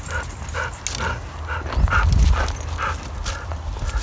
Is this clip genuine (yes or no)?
yes